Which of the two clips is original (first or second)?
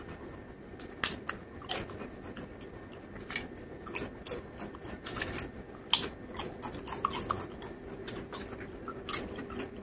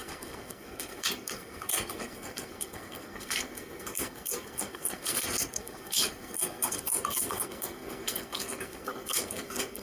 first